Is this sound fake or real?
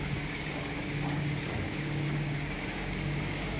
fake